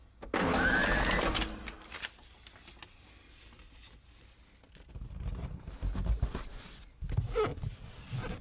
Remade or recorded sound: recorded